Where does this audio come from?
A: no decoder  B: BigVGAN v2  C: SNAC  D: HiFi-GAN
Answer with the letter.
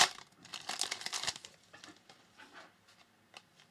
A